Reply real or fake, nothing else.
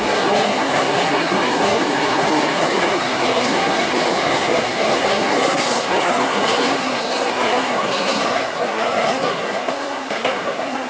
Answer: fake